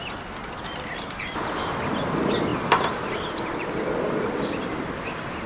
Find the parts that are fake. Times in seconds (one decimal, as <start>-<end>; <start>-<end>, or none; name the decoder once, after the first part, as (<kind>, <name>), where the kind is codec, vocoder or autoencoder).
0.0-5.5 (vocoder, BigVGAN v2)